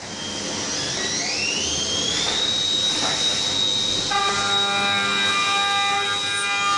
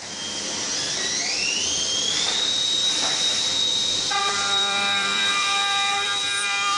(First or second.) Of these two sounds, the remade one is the second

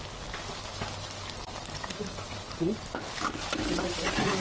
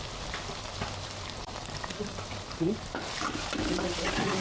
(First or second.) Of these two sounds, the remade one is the second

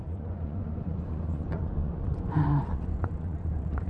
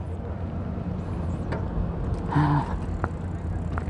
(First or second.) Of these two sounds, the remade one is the first